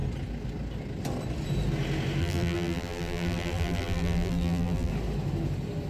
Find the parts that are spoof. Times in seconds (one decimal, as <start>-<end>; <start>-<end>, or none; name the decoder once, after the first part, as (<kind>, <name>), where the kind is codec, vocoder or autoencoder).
2.2-4.9 (vocoder, BigVGAN v2)